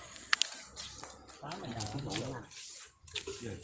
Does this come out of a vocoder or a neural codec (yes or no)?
no